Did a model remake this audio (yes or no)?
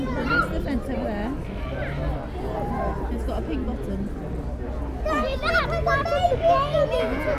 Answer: no